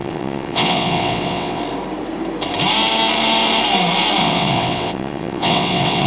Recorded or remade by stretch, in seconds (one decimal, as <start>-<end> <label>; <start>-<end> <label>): 0.0-1.6 remade; 1.6-4.2 recorded; 4.2-6.1 remade